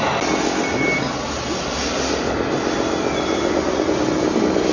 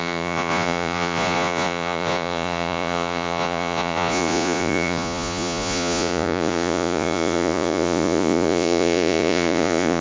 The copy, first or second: second